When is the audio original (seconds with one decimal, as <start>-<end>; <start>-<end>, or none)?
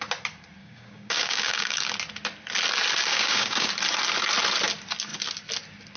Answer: 0.0-0.6; 1.9-3.1; 3.7-6.0